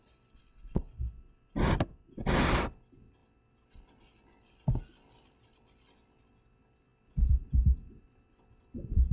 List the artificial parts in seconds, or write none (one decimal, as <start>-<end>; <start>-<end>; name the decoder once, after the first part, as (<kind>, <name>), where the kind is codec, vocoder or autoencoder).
none